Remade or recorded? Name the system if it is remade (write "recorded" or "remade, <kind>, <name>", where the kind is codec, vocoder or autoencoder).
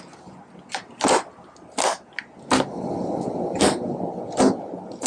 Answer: recorded